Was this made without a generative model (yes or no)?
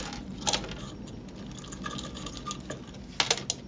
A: yes